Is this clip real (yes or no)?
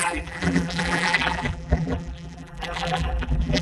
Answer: no